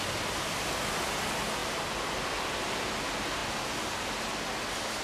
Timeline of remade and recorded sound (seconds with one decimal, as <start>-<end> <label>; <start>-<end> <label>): 0.0-5.0 recorded